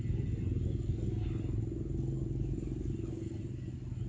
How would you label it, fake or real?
real